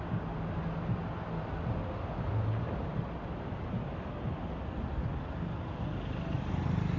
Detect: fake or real real